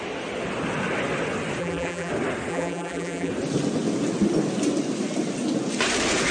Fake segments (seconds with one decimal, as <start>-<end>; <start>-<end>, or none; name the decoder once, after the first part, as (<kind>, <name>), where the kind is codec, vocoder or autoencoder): 1.6-2.1 (vocoder, BigVGAN v2); 2.5-3.3